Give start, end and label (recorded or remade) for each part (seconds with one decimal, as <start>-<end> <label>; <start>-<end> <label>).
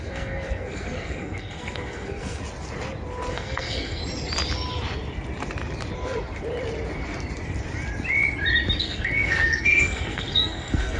0.0-2.4 remade; 2.4-3.3 recorded; 3.3-4.0 remade; 4.0-8.8 recorded; 8.8-11.0 remade